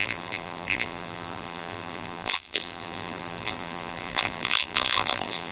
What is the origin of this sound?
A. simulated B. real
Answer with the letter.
A